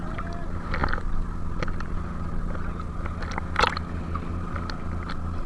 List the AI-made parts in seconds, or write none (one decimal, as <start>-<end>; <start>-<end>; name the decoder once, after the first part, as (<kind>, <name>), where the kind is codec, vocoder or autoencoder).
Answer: none